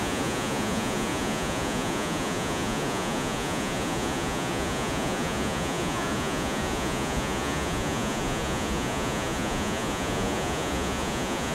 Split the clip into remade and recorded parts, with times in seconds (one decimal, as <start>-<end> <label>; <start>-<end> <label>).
0.0-11.5 remade